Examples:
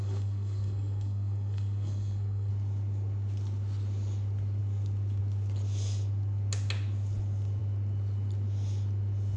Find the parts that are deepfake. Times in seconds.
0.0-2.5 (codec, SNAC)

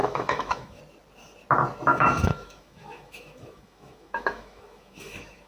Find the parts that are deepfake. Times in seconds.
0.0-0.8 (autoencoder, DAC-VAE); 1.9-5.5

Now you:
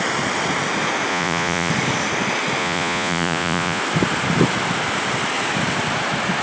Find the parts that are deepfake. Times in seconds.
1.1-1.7 (vocoder, Vocos); 2.6-3.8

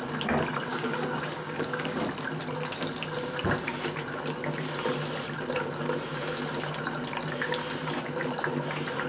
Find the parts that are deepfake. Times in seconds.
0.7-2.0 (codec, DAC)

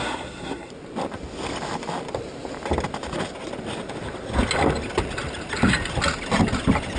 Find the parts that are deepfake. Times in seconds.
0.0-0.7 (codec, SNAC)

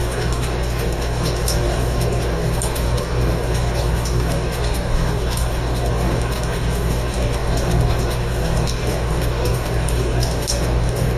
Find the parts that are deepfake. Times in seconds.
0.0-11.2 (codec, DAC)

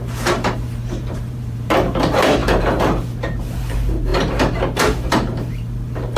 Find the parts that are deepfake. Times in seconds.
0.0-6.2 (vocoder, BigVGAN v2)